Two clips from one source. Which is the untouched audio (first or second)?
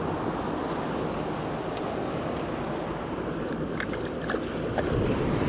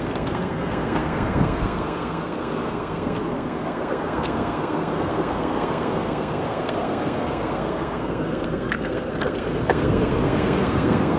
first